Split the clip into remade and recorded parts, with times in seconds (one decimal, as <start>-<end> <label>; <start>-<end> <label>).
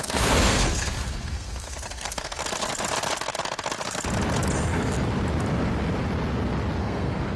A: 0.0-2.4 remade; 2.4-6.8 recorded; 6.8-7.4 remade